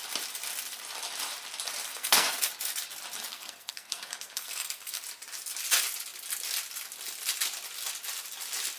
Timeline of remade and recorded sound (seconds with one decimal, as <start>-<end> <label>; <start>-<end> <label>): 0.0-1.9 recorded; 1.9-2.5 remade; 2.5-3.3 recorded; 3.3-5.0 remade; 5.0-8.8 recorded